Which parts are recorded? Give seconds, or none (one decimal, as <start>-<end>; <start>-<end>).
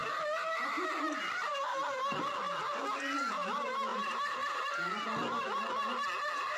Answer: 0.0-3.9; 4.7-6.6